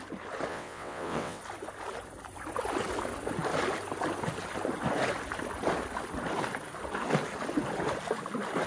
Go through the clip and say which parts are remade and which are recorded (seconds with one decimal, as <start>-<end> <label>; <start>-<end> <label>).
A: 0.0-0.5 recorded; 0.5-1.4 remade; 1.4-8.7 recorded